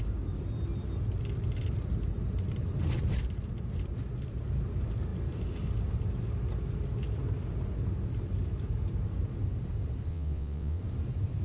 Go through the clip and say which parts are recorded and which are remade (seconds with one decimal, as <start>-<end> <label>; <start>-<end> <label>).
0.0-10.1 recorded; 10.1-10.8 remade; 10.8-11.4 recorded